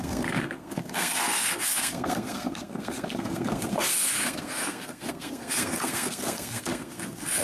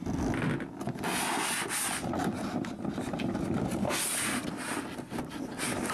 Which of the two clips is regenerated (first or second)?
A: first